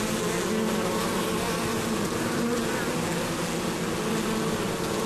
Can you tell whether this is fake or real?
real